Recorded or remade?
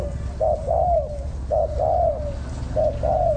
recorded